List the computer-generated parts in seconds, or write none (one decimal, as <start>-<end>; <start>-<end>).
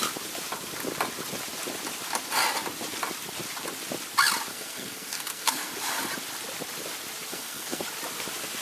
4.5-5.7; 7.3-7.8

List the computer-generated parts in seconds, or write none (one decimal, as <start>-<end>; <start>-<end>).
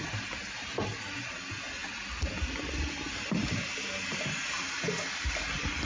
none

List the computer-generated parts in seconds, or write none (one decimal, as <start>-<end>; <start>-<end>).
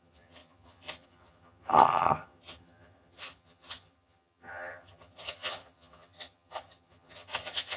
0.0-7.8